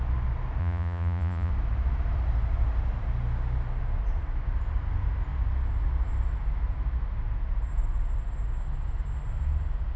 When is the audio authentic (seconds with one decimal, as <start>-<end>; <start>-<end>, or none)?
0.0-0.6; 1.5-10.0

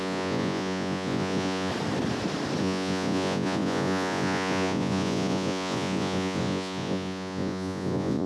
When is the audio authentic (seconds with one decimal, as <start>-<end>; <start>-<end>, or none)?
1.7-2.6